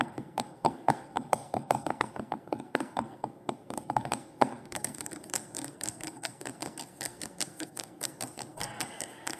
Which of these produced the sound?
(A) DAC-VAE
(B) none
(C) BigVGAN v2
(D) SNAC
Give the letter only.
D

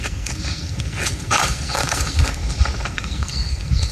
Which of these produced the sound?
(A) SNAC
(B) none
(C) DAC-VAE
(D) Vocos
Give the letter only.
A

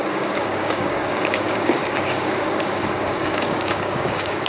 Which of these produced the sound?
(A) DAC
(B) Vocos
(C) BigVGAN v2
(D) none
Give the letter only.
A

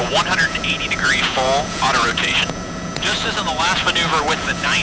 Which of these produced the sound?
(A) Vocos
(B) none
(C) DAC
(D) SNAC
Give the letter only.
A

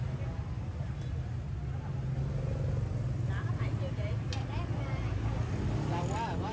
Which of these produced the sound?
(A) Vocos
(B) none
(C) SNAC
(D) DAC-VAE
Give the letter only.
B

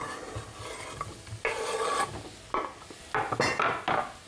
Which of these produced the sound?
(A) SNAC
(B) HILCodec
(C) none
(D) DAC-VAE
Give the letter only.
C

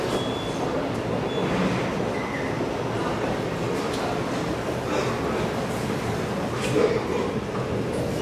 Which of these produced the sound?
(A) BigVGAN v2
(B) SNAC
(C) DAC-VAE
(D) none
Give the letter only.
D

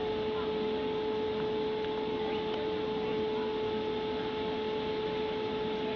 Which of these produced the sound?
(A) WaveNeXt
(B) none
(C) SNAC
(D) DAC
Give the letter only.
B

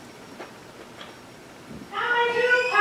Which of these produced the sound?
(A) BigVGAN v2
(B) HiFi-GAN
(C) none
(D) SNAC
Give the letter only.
C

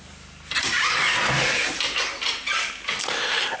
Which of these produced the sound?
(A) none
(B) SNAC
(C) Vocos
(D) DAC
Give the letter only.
A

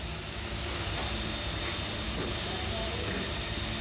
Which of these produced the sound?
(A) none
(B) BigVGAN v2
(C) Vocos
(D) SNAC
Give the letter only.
A